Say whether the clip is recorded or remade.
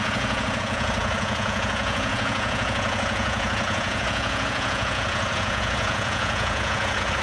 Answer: remade